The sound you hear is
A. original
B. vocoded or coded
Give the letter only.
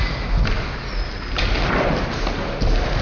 A